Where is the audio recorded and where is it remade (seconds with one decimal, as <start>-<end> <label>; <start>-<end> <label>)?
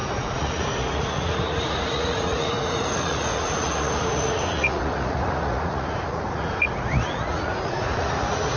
0.0-8.6 remade